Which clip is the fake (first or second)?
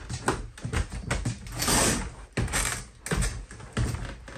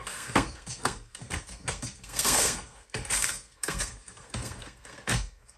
second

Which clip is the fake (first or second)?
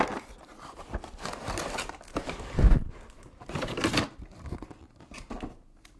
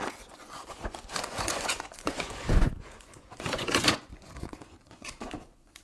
second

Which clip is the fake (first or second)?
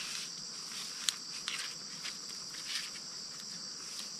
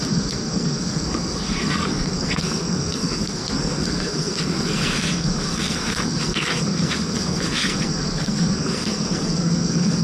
second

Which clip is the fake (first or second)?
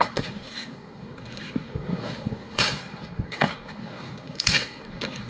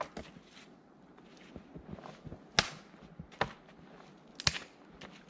first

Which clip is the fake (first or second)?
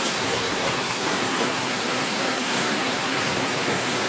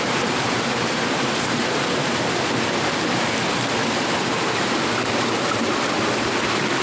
first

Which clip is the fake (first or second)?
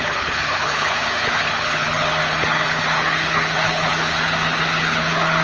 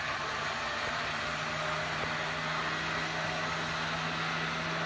first